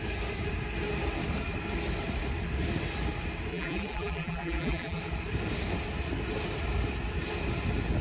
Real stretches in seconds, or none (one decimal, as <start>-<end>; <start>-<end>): 0.0-3.5; 5.0-8.0